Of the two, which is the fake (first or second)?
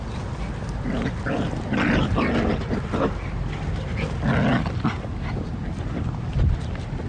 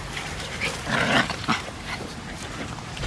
second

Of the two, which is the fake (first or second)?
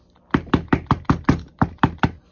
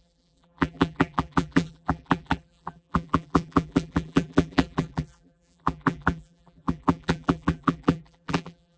second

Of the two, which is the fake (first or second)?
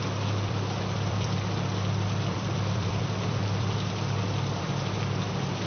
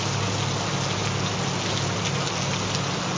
first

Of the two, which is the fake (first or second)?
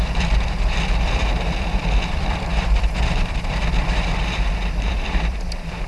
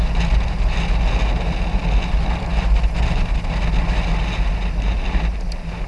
first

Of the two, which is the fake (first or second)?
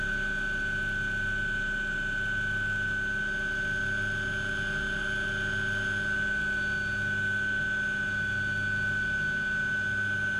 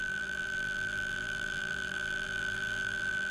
second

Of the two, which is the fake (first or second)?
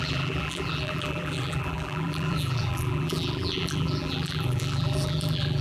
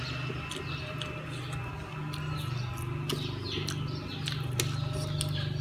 first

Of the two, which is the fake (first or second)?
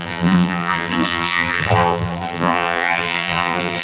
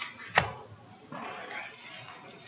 first